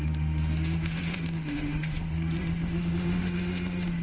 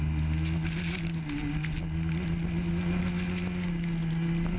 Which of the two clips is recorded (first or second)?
second